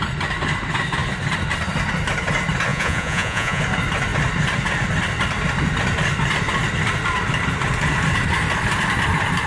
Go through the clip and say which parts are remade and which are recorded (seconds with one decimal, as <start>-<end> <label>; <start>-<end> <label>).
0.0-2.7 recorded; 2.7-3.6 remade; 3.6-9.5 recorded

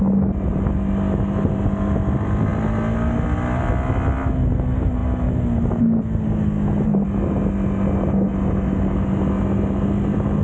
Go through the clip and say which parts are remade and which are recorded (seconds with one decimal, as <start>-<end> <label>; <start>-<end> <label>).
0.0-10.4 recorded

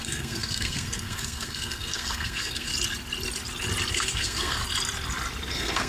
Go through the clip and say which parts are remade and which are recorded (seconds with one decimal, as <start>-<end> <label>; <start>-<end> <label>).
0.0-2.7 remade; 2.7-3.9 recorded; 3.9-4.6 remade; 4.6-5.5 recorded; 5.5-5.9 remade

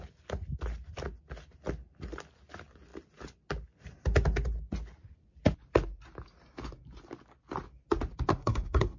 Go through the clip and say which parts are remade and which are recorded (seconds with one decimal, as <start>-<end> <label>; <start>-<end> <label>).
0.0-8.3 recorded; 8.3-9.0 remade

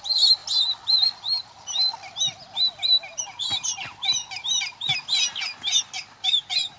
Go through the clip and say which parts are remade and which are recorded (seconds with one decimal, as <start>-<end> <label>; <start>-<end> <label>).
0.0-6.8 recorded